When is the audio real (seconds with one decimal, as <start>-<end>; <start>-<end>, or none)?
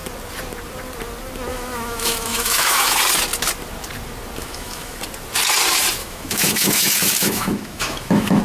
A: 0.0-1.5; 3.0-4.4; 5.0-6.0